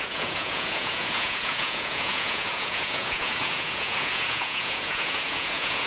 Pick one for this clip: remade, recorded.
remade